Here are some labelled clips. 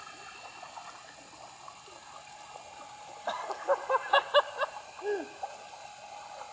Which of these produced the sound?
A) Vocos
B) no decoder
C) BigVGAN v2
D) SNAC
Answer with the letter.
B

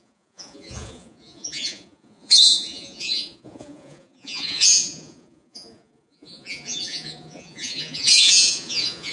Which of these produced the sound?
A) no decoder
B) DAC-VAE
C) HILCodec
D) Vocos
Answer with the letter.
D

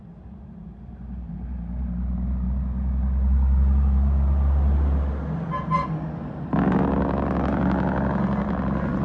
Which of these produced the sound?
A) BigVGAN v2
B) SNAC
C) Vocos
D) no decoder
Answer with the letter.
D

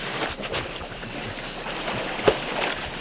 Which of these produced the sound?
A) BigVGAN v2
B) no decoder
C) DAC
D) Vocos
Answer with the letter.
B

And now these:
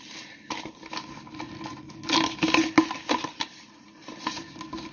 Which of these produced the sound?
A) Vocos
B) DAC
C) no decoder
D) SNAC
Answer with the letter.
C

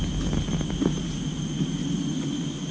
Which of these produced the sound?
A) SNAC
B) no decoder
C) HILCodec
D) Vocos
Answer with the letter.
B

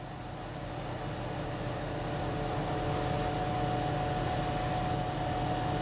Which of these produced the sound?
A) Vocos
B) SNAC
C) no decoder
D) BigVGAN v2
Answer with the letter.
C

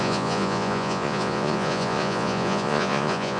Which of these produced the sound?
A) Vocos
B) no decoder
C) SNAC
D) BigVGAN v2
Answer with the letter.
A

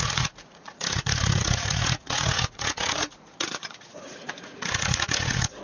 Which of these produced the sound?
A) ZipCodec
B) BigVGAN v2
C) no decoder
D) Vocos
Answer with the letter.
D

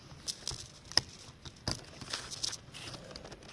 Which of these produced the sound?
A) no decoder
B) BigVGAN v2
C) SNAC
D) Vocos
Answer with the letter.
A